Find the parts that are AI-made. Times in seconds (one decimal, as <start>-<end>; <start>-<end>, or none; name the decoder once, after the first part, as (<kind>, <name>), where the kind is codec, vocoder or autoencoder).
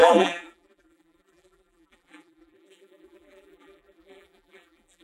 0.0-5.0 (vocoder, BigVGAN v2)